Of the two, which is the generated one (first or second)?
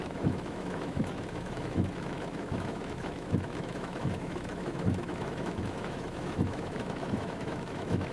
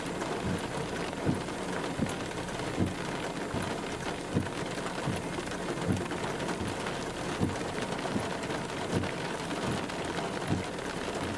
first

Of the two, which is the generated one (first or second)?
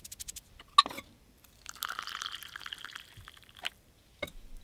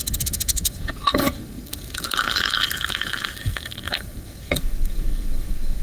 second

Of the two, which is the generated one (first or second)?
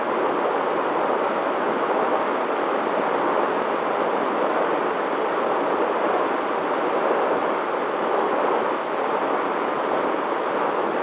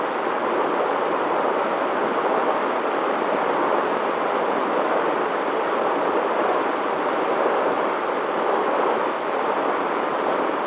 second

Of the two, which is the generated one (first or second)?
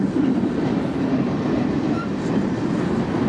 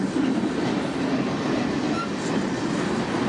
first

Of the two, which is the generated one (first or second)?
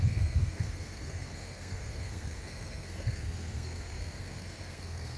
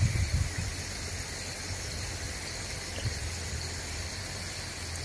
first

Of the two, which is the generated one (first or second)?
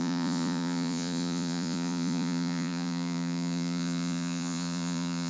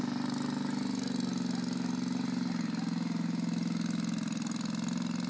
first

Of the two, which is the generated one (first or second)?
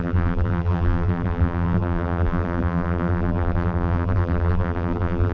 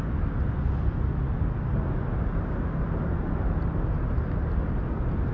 first